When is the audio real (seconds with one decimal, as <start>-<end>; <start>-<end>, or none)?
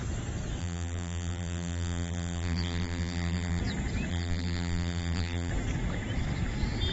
0.0-0.6; 3.6-4.1; 5.5-6.9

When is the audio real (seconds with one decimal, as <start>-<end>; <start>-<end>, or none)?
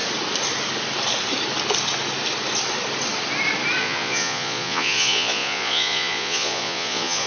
0.0-3.8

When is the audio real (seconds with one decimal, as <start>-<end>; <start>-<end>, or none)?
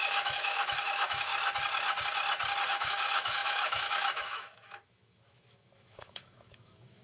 1.3-2.7